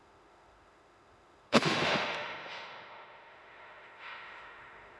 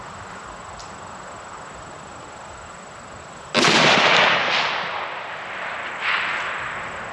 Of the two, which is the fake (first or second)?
first